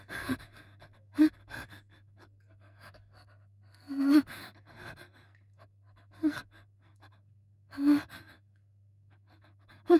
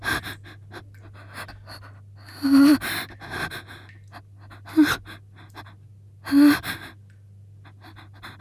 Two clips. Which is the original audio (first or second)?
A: second